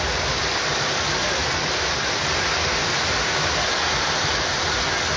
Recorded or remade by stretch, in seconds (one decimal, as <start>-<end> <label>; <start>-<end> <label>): 0.0-1.4 recorded; 1.4-2.1 remade; 2.1-2.8 recorded; 2.8-3.8 remade; 3.8-5.2 recorded